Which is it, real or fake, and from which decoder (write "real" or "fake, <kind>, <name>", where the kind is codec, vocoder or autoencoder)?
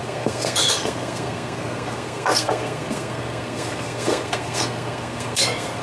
fake, codec, SNAC